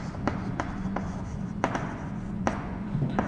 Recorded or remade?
remade